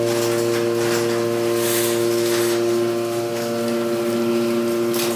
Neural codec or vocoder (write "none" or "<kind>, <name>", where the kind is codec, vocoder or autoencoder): none